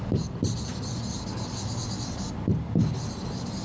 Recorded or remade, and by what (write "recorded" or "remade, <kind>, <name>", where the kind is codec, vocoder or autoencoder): recorded